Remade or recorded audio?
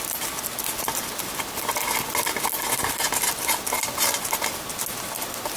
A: recorded